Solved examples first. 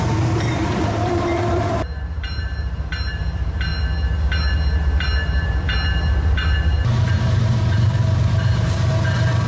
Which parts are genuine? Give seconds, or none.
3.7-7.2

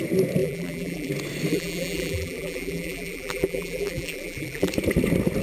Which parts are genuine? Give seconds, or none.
0.0-0.4; 1.1-1.5; 4.7-5.4

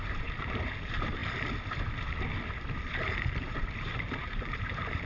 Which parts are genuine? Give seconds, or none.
1.2-3.8